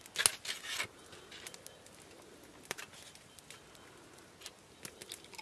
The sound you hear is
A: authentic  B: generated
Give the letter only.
A